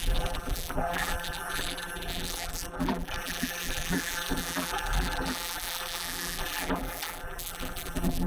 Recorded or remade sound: remade